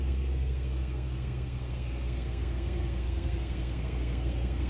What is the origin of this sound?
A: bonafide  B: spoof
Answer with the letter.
B